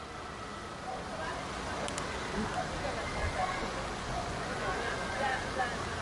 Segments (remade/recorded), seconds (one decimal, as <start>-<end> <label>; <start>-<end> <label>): 0.0-3.2 recorded; 3.2-5.6 remade; 5.6-6.0 recorded